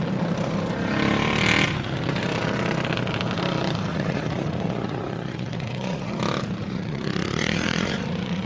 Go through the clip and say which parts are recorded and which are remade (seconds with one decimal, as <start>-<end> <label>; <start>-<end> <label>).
0.0-3.9 recorded; 3.9-6.1 remade; 6.1-6.6 recorded; 6.6-8.5 remade